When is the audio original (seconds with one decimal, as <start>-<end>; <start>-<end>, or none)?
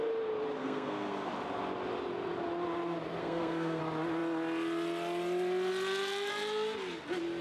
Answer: 0.0-0.6; 1.3-3.2; 3.8-7.4